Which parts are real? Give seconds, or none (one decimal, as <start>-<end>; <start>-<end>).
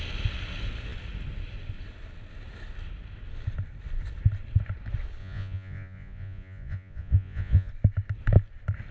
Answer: 0.0-5.2; 7.7-8.9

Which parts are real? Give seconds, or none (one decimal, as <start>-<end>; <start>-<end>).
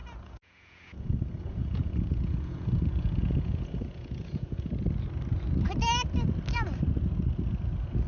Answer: 4.7-8.1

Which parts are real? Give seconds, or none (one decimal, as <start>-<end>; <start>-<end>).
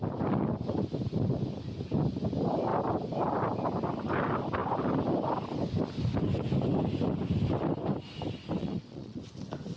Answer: 0.0-8.6; 9.2-9.8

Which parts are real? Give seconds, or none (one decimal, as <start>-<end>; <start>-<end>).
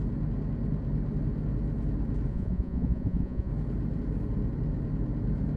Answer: 0.0-2.3; 3.5-5.6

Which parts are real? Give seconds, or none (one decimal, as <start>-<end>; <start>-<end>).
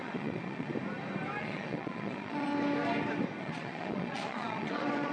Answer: 0.7-1.4; 2.5-3.4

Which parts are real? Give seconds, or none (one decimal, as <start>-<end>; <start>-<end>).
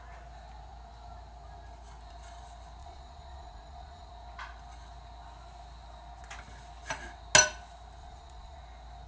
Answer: 0.0-2.8; 4.1-8.0; 8.6-9.1